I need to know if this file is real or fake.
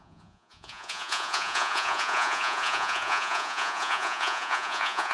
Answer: fake